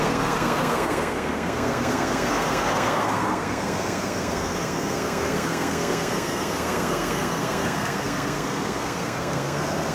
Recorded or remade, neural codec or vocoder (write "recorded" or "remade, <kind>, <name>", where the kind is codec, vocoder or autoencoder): remade, codec, SNAC